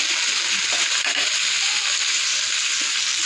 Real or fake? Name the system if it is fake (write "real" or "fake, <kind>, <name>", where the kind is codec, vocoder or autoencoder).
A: real